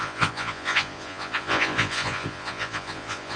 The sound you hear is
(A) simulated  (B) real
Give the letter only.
A